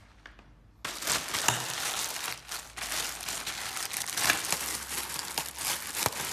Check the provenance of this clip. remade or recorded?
recorded